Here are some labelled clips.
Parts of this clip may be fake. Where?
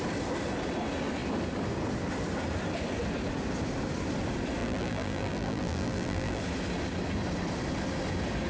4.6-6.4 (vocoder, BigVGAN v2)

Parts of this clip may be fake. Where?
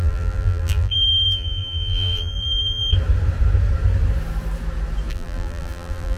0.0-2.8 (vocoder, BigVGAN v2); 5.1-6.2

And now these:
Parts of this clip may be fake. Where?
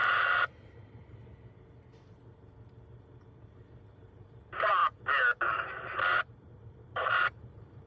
3.9-4.8 (vocoder, BigVGAN v2); 6.9-7.9